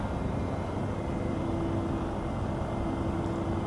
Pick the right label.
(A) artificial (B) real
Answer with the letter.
B